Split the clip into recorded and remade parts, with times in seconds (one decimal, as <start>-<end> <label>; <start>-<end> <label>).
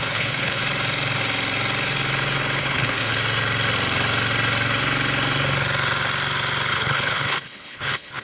0.0-0.6 remade; 0.6-2.6 recorded; 2.6-3.1 remade; 3.1-6.7 recorded; 6.7-8.2 remade